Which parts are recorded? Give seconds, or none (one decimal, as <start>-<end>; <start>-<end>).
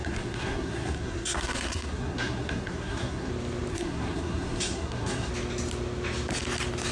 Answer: 3.3-3.7; 5.3-6.9